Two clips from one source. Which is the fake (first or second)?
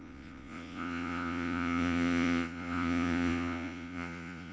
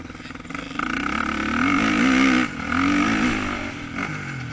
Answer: first